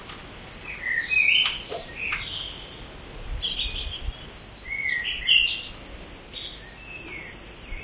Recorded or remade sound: recorded